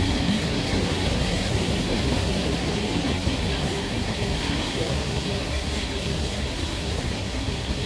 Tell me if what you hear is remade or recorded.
remade